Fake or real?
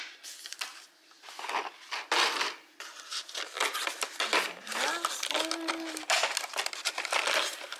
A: real